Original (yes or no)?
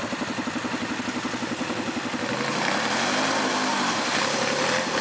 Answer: yes